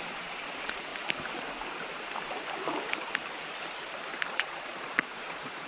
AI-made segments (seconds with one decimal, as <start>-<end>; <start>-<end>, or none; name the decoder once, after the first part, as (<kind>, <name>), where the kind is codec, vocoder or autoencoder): 0.0-0.9 (vocoder, Vocos); 4.3-5.7